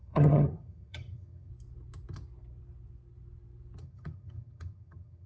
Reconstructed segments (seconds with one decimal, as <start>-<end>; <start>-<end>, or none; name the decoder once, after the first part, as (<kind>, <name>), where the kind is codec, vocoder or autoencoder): 0.0-1.5 (vocoder, HiFi-GAN); 3.8-5.3